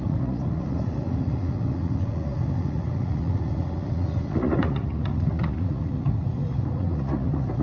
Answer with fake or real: fake